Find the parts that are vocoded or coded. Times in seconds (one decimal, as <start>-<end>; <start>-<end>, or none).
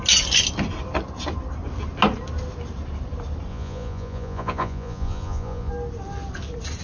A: 3.5-5.7